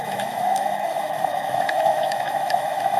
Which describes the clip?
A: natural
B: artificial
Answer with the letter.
B